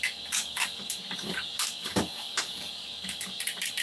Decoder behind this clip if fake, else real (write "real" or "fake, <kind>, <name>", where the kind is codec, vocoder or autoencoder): fake, codec, DAC